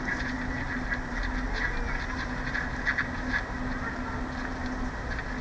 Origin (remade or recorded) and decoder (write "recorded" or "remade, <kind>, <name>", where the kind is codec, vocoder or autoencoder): recorded